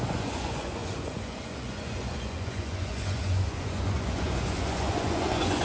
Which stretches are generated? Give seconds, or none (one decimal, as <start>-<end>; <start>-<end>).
0.0-5.6